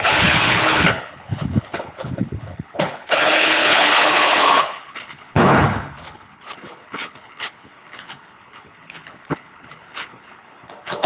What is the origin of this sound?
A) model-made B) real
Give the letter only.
A